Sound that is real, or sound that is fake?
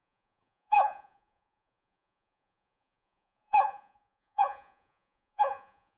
fake